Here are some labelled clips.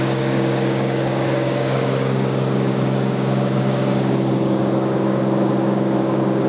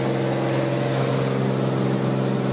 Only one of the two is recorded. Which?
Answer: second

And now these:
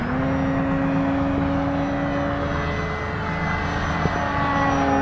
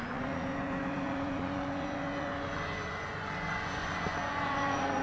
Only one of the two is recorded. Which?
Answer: first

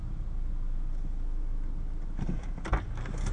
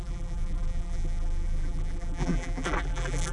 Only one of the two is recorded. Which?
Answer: first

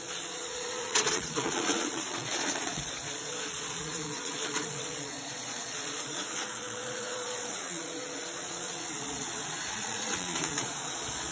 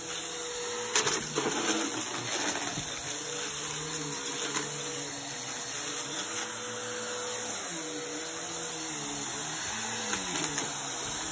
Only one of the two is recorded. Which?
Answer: second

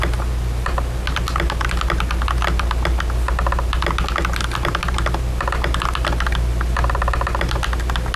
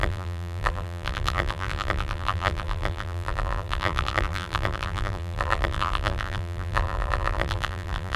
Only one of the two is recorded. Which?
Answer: first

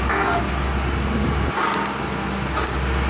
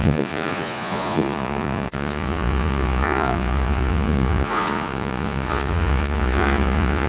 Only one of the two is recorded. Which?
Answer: first